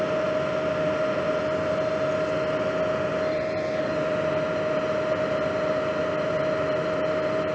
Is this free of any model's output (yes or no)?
yes